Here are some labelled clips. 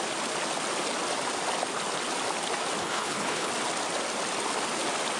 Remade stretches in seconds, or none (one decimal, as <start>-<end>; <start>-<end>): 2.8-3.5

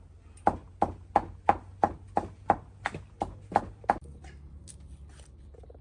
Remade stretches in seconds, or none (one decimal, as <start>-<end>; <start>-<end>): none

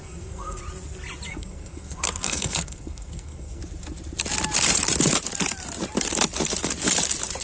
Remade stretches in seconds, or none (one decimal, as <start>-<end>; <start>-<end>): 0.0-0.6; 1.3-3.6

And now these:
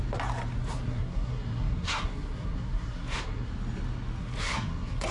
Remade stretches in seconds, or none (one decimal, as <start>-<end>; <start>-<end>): 0.6-3.5; 4.2-5.1

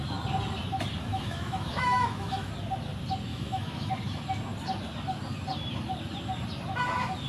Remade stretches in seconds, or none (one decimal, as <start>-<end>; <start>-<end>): 1.1-2.5; 3.3-3.9

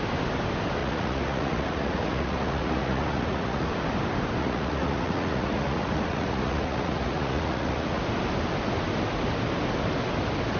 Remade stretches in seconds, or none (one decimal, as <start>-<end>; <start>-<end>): 0.8-3.7; 4.4-8.0

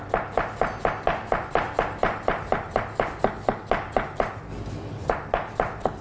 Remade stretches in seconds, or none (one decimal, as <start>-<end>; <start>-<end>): 4.5-5.1